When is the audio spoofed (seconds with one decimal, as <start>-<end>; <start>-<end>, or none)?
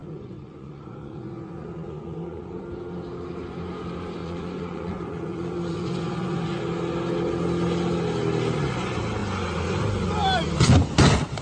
0.0-2.6; 4.2-6.6